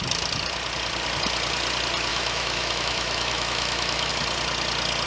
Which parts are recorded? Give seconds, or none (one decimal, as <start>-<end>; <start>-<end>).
0.0-2.1; 4.1-5.1